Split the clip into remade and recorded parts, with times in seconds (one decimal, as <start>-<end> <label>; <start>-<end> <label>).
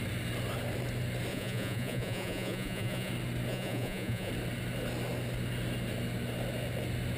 0.0-1.3 recorded; 1.3-3.1 remade; 3.1-3.5 recorded; 3.5-4.3 remade; 4.3-7.2 recorded